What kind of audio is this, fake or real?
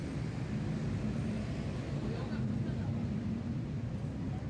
real